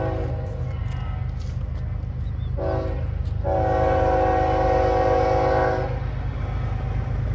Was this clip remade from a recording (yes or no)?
no